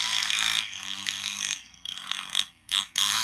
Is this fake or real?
fake